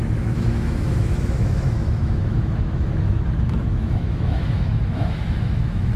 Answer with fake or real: fake